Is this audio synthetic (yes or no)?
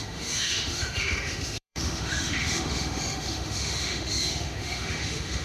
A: yes